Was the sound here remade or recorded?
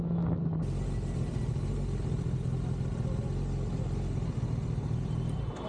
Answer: recorded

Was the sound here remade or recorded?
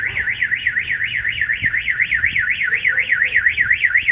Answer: recorded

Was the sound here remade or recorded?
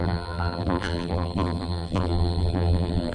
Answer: remade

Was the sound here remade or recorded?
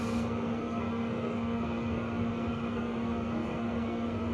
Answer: remade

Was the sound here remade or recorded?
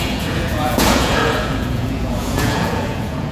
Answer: remade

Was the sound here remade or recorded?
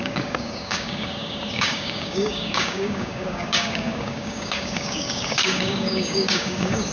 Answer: remade